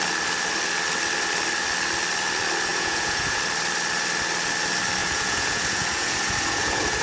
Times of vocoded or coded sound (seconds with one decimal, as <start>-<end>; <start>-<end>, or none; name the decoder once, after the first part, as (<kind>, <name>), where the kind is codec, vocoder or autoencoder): 2.7-3.4 (vocoder, Vocos); 5.0-7.0